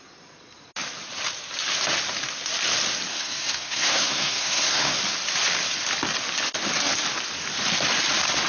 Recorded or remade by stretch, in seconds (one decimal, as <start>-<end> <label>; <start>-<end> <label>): 0.0-3.1 recorded; 3.1-5.0 remade; 5.0-8.5 recorded